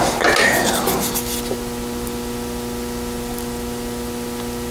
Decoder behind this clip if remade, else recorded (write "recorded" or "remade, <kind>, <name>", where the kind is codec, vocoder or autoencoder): recorded